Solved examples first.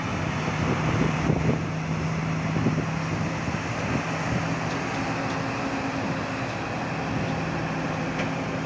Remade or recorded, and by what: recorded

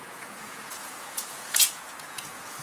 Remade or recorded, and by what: remade, vocoder, Vocos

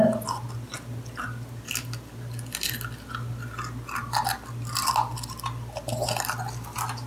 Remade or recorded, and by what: recorded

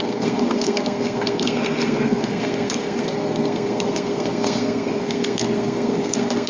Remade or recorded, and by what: remade, codec, SNAC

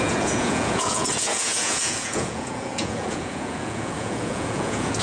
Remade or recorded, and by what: remade, vocoder, Vocos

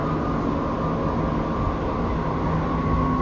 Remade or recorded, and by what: recorded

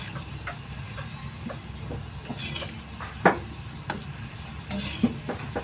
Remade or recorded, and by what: recorded